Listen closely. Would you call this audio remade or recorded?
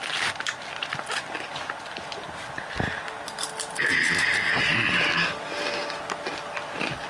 recorded